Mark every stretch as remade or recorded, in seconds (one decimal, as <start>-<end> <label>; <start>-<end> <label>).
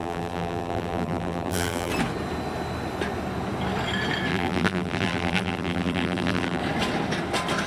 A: 0.0-1.9 remade; 1.9-4.3 recorded; 4.3-6.6 remade; 6.6-7.7 recorded